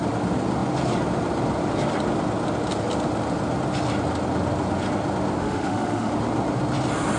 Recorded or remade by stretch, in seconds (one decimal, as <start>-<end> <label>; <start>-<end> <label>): 0.0-5.4 recorded; 5.4-6.1 remade; 6.1-7.2 recorded